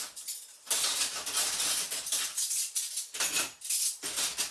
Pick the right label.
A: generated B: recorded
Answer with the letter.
B